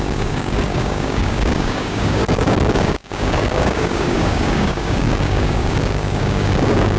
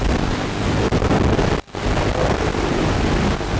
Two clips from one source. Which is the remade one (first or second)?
first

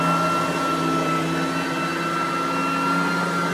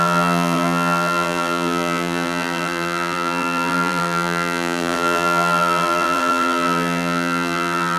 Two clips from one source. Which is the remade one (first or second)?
second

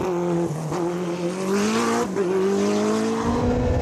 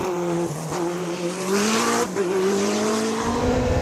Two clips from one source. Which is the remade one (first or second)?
second